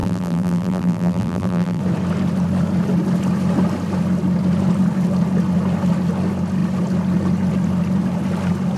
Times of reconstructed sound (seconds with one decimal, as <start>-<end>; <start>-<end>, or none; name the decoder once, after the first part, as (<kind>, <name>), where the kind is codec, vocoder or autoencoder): 0.0-1.8 (vocoder, BigVGAN v2)